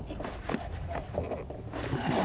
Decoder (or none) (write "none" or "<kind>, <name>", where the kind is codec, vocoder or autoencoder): none